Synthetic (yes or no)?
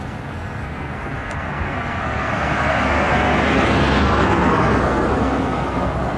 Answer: yes